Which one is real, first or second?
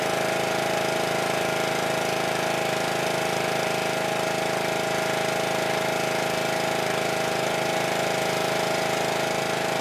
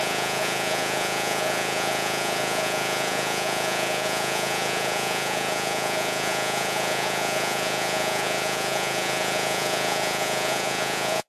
first